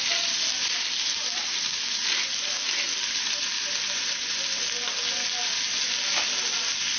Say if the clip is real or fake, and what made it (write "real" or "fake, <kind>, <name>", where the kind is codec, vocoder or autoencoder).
real